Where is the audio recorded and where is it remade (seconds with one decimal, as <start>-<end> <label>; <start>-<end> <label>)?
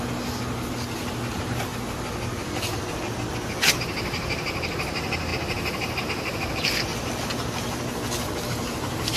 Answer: 0.0-1.7 remade; 1.7-3.8 recorded; 3.8-6.9 remade; 6.9-8.5 recorded; 8.5-9.2 remade